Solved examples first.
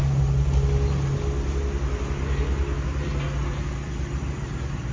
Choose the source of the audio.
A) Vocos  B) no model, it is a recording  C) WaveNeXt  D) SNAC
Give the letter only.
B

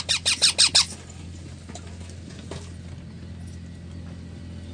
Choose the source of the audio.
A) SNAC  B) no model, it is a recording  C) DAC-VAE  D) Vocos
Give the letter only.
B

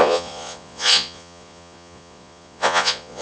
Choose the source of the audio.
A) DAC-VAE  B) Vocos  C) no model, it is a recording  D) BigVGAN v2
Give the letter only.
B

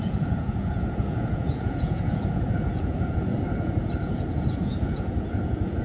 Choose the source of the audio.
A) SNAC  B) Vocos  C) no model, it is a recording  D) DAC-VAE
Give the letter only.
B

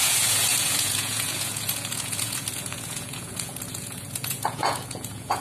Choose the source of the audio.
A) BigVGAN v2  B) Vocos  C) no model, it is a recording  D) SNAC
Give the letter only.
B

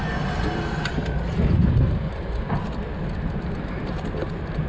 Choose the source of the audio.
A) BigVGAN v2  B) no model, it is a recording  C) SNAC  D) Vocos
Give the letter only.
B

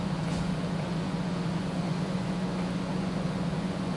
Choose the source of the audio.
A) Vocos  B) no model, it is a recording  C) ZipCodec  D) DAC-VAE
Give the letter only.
A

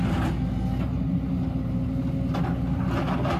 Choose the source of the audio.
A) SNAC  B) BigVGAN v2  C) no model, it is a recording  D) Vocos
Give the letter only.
C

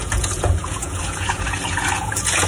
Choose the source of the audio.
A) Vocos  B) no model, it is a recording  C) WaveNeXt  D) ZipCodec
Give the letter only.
A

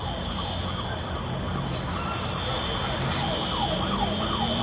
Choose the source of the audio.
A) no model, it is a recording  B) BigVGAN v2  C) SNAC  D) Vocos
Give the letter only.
A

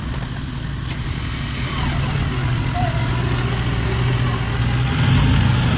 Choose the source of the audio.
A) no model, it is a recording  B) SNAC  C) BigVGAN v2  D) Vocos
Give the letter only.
A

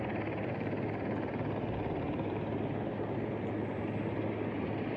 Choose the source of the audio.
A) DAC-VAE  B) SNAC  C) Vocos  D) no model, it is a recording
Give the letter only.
D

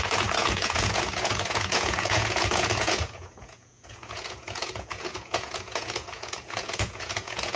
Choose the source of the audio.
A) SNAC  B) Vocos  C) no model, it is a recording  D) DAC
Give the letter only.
B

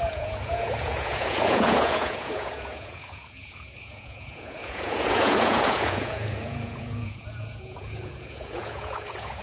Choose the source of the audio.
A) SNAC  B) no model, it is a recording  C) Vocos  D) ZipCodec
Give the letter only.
C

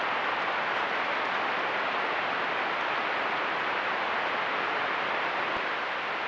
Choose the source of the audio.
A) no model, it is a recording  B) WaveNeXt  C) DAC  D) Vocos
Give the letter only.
A